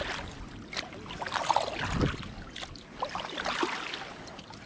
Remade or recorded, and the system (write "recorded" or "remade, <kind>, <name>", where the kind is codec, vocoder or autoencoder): recorded